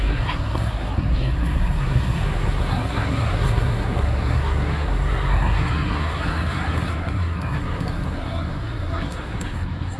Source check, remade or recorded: remade